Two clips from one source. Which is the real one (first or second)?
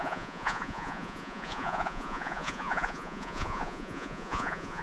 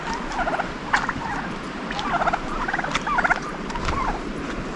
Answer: second